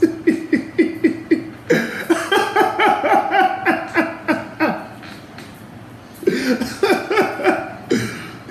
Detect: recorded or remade recorded